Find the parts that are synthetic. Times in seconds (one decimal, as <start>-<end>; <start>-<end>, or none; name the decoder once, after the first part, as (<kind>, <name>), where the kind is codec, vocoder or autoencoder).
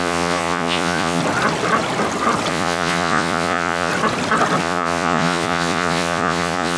0.0-1.2 (vocoder, Vocos); 2.5-3.9; 4.6-6.8